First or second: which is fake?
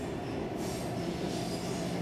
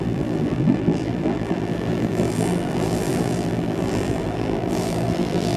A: second